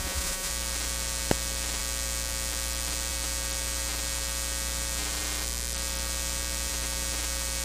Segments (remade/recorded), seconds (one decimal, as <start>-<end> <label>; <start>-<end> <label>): 0.0-0.5 remade; 0.5-7.6 recorded